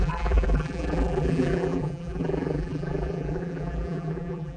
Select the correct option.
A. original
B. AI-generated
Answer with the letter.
B